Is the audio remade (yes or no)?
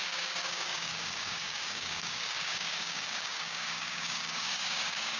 yes